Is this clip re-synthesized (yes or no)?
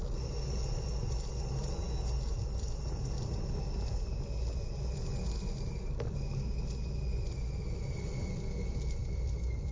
no